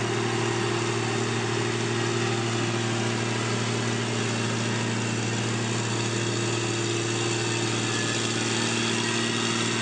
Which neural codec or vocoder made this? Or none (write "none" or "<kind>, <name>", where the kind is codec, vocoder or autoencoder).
none